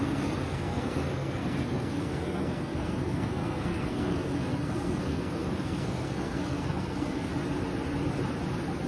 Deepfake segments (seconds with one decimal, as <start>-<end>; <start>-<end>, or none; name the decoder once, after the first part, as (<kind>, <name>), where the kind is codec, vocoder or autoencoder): 0.0-7.3 (codec, SNAC)